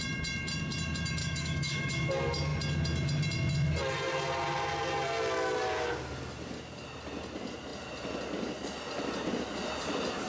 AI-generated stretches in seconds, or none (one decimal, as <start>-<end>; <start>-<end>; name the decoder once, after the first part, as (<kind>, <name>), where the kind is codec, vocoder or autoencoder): 1.2-2.1 (autoencoder, DAC-VAE)